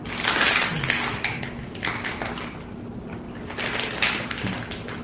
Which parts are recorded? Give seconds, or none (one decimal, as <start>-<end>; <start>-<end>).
0.0-5.0